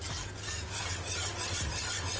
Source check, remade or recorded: recorded